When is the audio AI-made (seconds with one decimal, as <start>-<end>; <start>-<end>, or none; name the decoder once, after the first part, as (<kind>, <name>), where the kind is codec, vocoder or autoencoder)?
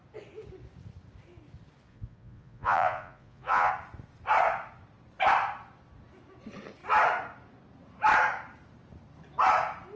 1.9-3.7 (vocoder, Vocos)